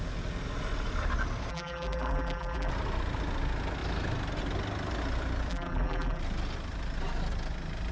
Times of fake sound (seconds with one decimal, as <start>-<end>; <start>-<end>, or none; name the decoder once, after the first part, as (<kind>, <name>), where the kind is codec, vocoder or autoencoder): 1.5-2.7 (vocoder, BigVGAN v2); 5.5-6.2